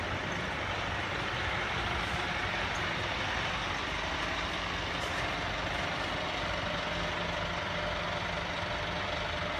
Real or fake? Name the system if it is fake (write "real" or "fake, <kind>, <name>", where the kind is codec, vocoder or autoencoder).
real